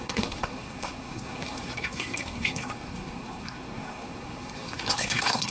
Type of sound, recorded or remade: remade